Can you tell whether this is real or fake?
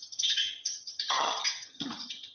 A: fake